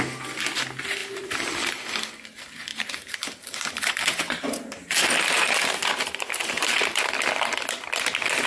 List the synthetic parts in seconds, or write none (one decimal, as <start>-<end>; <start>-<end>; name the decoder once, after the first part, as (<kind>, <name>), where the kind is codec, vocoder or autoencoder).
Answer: 1.0-2.0 (vocoder, BigVGAN v2); 2.7-7.1